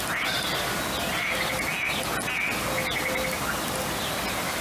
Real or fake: real